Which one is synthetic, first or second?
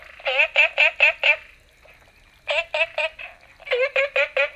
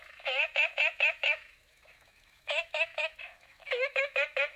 second